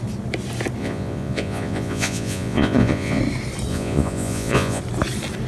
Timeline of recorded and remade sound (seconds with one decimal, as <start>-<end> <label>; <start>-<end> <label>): 0.0-0.8 recorded; 0.8-3.2 remade; 3.2-3.7 recorded; 3.7-4.8 remade; 4.8-5.5 recorded